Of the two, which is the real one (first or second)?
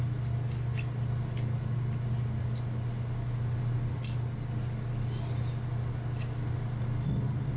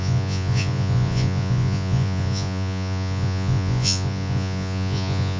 first